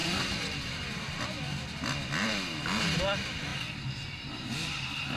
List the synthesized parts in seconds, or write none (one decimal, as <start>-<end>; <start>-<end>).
0.0-1.2